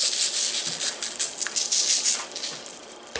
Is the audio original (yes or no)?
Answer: yes